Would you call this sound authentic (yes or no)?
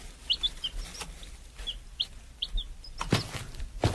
yes